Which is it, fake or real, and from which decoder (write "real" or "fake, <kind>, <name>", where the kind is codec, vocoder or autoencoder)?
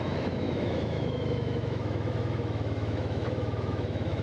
fake, autoencoder, DAC-VAE